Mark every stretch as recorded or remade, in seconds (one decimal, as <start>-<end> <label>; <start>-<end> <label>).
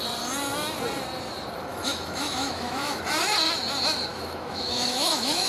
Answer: 0.0-1.7 recorded; 1.7-3.0 remade; 3.0-4.1 recorded; 4.1-5.5 remade